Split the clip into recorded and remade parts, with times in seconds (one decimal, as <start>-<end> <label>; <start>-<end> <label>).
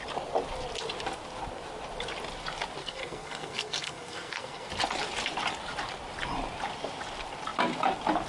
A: 0.0-2.8 recorded; 2.8-4.7 remade; 4.7-8.3 recorded